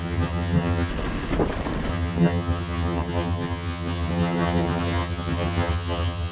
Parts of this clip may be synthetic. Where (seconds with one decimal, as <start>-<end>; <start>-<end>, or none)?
0.0-0.9; 1.9-6.3